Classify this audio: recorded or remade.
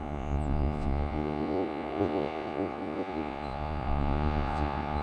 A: remade